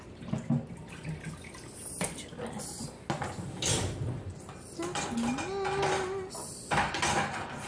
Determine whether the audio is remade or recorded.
recorded